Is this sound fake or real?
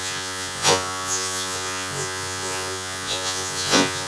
fake